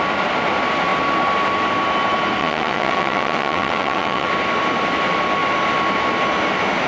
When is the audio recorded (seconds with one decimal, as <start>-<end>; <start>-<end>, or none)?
0.0-2.4; 4.3-6.9